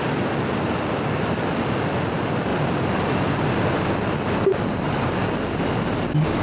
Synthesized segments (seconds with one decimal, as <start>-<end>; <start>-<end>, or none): none